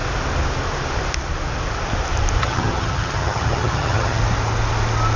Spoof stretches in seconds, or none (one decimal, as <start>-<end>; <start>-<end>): 2.4-4.2